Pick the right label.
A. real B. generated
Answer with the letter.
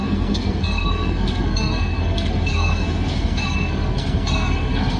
B